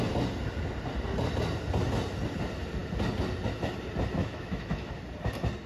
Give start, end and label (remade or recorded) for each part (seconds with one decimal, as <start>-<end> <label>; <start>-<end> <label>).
0.0-4.2 recorded; 4.2-4.9 remade; 4.9-5.7 recorded